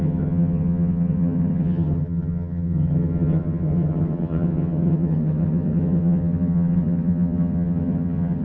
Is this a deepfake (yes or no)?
yes